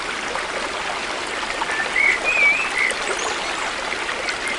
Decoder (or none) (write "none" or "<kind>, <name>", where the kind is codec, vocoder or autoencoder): none